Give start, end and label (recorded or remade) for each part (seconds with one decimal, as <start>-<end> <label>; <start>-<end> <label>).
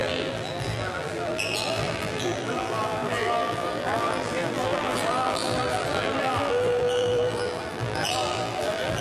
0.0-9.0 remade